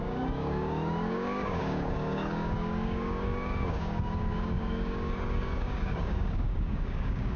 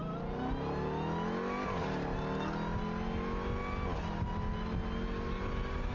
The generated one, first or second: first